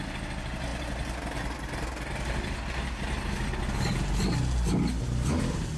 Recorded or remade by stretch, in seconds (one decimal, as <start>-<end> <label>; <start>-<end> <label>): 0.0-5.8 recorded